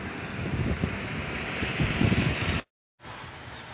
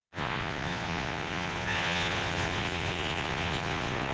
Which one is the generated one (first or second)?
second